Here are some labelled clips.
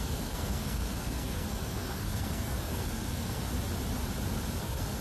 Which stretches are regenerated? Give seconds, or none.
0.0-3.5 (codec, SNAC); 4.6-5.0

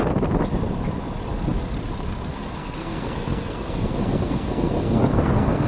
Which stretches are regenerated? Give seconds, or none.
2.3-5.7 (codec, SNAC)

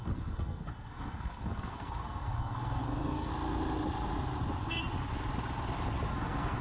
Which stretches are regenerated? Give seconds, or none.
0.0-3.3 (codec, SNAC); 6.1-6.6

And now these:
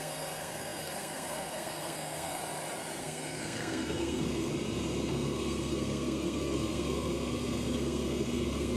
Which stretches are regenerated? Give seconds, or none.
0.0-2.4 (codec, SNAC); 3.0-4.5; 5.1-8.8

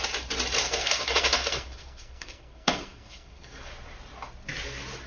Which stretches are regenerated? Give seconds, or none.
0.6-3.7 (codec, SNAC)

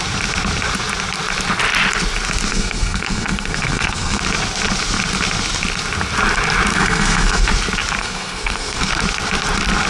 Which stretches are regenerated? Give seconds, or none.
2.5-4.2 (codec, SNAC); 6.7-7.5; 8.0-8.9